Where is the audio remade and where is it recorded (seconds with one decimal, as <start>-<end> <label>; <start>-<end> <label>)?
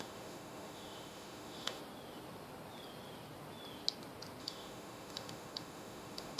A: 0.0-1.8 remade; 1.8-4.4 recorded; 4.4-6.4 remade